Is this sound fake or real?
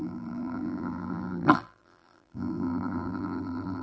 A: fake